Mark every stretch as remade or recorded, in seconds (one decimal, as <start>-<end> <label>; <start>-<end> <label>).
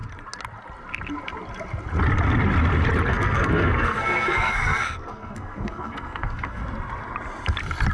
0.0-3.1 recorded; 3.1-6.6 remade; 6.6-7.9 recorded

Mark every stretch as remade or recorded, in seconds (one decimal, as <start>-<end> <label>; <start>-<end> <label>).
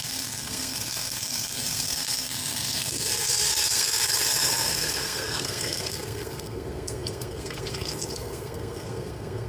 0.0-9.5 remade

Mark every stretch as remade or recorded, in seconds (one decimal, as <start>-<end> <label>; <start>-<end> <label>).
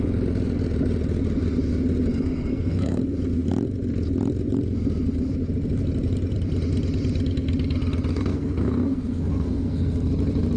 0.0-2.1 recorded; 2.1-3.0 remade; 3.0-8.1 recorded; 8.1-10.1 remade; 10.1-10.6 recorded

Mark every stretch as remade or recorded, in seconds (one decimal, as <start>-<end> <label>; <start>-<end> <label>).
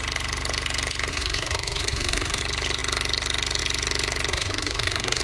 0.0-1.1 recorded; 1.1-2.4 remade; 2.4-4.3 recorded; 4.3-5.2 remade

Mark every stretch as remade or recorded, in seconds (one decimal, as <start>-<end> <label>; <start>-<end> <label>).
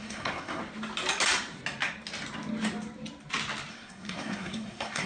0.0-0.6 remade; 0.6-3.7 recorded; 3.7-5.1 remade